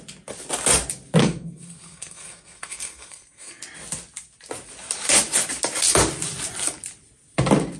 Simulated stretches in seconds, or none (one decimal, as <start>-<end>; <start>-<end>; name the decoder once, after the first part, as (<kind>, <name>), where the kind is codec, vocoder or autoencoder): 1.2-3.6 (codec, SNAC)